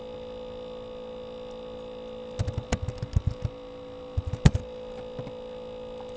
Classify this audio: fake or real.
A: real